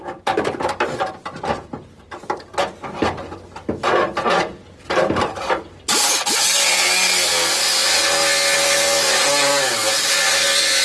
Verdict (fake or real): real